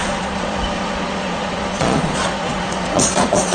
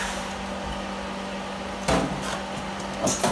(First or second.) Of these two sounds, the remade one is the first